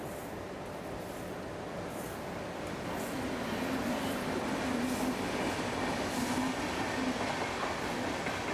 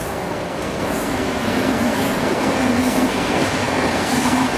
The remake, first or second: second